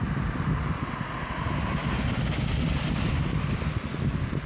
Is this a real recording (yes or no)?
yes